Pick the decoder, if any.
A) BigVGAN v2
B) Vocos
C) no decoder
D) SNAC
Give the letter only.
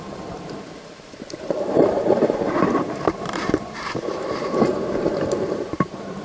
A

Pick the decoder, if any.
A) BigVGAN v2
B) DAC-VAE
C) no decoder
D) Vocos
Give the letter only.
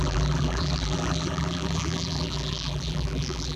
A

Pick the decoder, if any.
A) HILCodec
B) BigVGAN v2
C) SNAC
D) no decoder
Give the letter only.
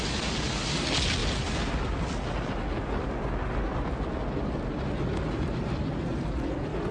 D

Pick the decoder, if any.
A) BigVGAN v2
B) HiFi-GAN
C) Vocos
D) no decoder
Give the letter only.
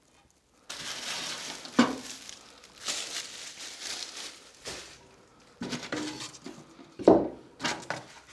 D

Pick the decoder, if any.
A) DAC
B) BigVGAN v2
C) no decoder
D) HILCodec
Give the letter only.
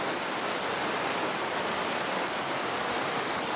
C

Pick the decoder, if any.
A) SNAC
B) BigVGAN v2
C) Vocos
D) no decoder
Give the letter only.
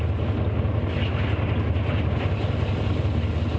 D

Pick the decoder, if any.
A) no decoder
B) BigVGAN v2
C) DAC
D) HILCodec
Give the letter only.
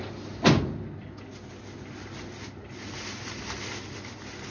A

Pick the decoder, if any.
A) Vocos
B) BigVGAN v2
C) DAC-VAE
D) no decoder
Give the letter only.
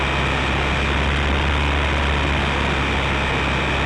D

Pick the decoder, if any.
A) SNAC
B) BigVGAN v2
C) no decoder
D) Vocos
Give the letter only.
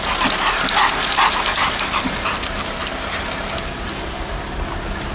C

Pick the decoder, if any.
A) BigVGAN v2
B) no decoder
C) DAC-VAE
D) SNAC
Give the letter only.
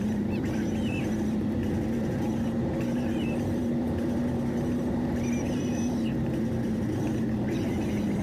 A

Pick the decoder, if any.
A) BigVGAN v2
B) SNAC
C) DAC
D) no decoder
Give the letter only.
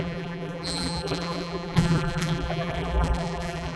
A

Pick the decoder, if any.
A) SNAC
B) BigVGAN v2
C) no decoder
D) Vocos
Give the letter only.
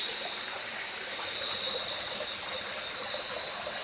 B